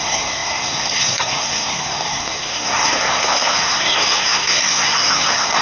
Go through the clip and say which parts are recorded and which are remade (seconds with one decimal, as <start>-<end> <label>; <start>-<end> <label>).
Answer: 0.0-5.6 remade